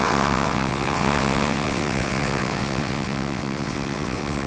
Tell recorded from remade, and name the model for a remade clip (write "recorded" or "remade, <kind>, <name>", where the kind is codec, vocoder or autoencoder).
remade, vocoder, WaveNeXt